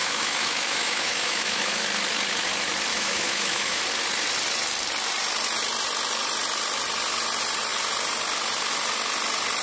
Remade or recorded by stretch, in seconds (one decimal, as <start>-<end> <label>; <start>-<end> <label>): 0.0-1.9 remade; 1.9-2.9 recorded; 2.9-3.8 remade; 3.8-9.6 recorded